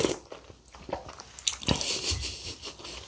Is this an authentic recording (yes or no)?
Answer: no